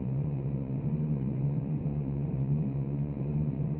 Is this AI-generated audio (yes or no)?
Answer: yes